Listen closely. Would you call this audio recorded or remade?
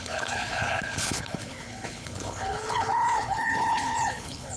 remade